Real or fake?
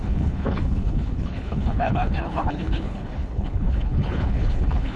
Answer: fake